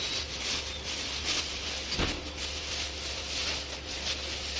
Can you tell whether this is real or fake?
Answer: real